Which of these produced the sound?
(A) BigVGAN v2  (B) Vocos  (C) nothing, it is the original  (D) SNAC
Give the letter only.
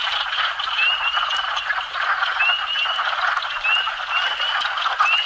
C